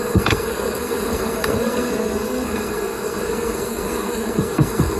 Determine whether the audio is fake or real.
fake